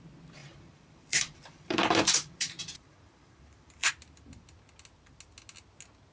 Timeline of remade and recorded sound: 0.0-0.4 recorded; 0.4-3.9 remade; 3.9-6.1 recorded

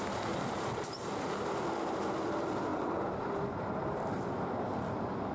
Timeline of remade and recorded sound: 0.0-1.0 recorded; 1.0-2.7 remade; 2.7-3.6 recorded; 3.6-5.3 remade

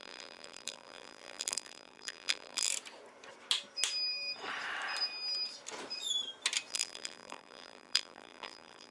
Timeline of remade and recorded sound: 0.0-2.7 remade; 2.7-6.7 recorded; 6.7-8.9 remade

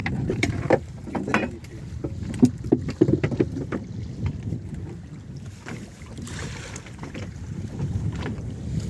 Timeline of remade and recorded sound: 0.0-8.9 remade

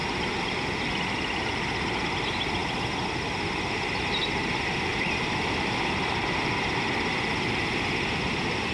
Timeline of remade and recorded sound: 0.0-4.9 recorded; 4.9-8.7 remade

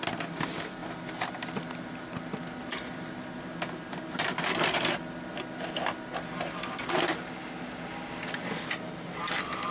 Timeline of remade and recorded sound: 0.0-9.7 recorded

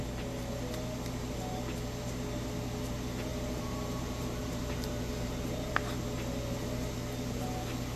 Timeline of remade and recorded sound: 0.0-3.3 recorded; 3.3-5.7 remade; 5.7-8.0 recorded